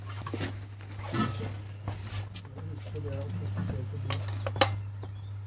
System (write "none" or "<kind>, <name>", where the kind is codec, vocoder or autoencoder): none